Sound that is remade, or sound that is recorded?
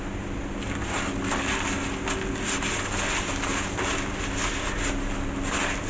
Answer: recorded